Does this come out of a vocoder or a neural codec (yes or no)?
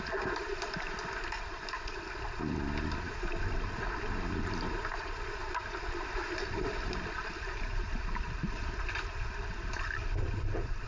yes